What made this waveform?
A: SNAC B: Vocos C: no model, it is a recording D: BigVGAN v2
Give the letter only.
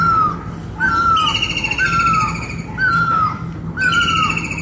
C